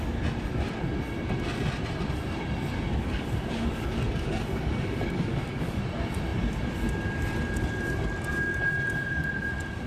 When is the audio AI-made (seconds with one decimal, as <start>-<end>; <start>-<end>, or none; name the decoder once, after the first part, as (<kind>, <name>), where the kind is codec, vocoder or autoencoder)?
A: 2.9-5.8 (codec, DAC)